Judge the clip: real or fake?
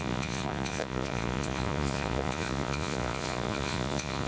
fake